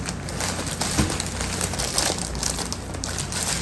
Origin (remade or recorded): recorded